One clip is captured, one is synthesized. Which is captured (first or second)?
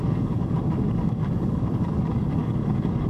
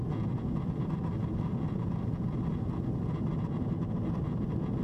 second